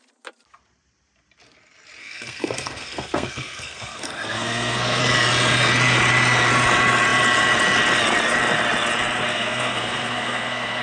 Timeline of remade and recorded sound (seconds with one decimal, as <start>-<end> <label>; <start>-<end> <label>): 0.0-2.0 recorded; 2.0-5.0 remade; 5.0-9.3 recorded; 9.3-10.8 remade